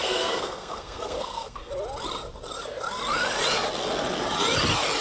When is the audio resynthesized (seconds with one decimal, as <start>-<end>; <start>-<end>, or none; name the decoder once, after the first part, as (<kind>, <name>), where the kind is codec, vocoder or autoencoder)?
0.0-1.7 (codec, SNAC)